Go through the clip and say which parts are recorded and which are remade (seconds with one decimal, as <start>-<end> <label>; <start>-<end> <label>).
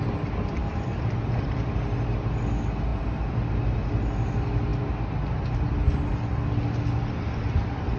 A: 0.0-0.6 recorded; 0.6-1.6 remade; 1.6-8.0 recorded